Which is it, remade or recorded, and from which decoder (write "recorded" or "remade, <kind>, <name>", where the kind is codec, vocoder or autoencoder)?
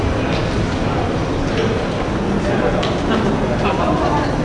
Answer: recorded